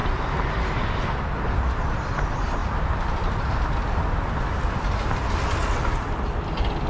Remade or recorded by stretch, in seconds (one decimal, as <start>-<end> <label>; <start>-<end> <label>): 0.0-2.6 remade; 2.6-6.9 recorded

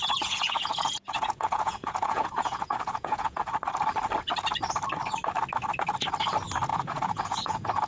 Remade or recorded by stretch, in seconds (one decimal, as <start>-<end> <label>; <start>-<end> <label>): 0.0-3.4 remade; 3.4-6.7 recorded; 6.7-7.9 remade

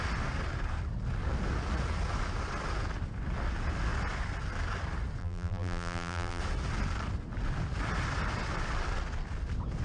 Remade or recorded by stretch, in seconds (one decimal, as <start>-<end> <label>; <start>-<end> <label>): 0.0-5.2 recorded; 5.2-6.4 remade; 6.4-9.8 recorded

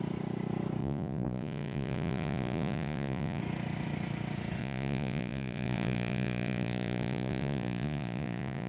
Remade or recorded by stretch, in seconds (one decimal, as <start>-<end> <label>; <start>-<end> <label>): 0.0-0.8 recorded; 0.8-3.4 remade; 3.4-4.6 recorded; 4.6-8.7 remade

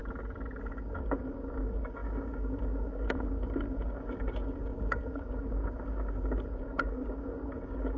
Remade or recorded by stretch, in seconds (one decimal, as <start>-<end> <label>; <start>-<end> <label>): 0.0-0.6 recorded; 0.6-8.0 remade

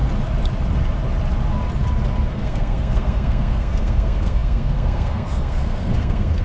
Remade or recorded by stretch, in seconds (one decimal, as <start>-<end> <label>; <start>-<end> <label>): 0.0-2.3 recorded; 2.3-6.4 remade

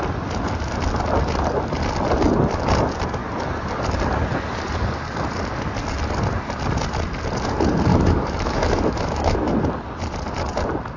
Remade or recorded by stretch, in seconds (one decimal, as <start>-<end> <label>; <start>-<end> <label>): 0.0-7.9 recorded; 7.9-9.5 remade; 9.5-11.0 recorded

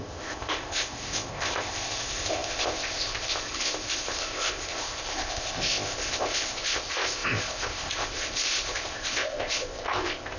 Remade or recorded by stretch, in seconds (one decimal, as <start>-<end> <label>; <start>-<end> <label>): 0.0-10.4 remade